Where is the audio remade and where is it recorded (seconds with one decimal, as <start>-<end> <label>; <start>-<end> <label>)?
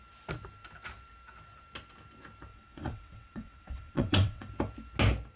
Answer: 0.0-2.5 recorded; 2.5-4.5 remade; 4.5-5.4 recorded